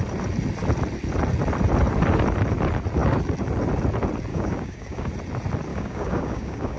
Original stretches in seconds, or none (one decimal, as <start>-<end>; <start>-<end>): 0.0-4.3; 5.1-5.7